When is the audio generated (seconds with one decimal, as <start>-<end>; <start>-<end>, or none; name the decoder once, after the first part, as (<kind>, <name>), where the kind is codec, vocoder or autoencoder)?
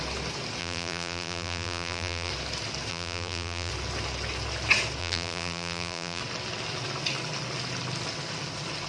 0.6-2.3 (vocoder, BigVGAN v2); 2.9-3.7; 5.0-6.2